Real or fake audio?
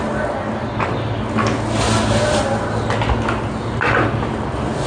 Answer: real